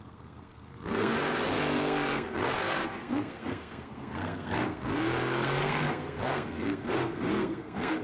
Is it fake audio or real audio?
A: fake